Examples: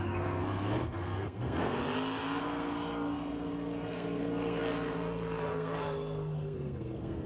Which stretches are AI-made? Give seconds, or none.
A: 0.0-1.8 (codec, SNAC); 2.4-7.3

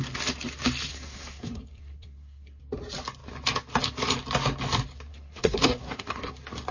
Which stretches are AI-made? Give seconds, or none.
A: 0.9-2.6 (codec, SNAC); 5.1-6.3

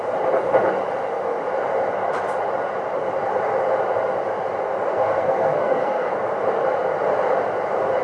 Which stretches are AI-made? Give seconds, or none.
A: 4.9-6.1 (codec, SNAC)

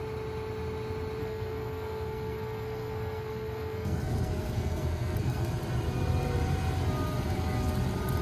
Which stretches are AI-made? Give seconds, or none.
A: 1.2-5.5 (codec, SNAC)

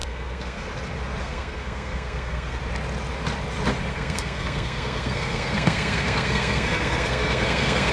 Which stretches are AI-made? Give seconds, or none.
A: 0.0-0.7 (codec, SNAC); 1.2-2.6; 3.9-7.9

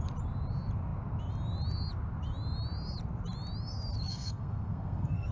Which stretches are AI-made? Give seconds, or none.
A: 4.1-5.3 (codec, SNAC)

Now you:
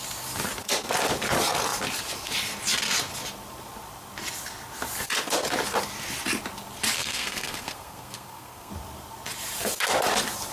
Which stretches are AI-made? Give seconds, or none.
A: 7.0-8.7 (codec, SNAC)

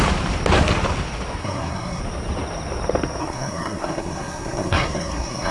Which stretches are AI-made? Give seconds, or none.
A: 1.4-2.0 (codec, SNAC); 3.2-5.5